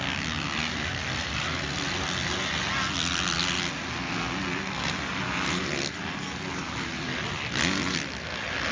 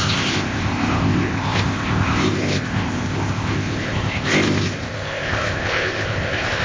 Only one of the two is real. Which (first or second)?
first